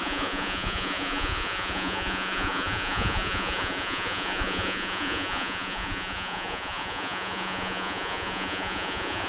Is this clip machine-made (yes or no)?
yes